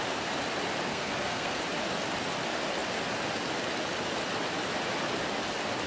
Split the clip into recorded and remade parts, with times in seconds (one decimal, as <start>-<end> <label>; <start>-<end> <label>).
0.0-0.9 recorded; 0.9-1.6 remade; 1.6-5.9 recorded